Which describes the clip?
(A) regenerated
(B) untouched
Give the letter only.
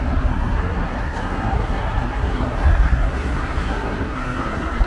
A